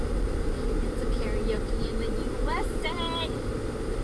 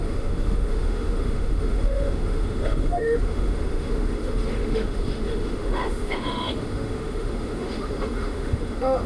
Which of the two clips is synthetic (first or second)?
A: second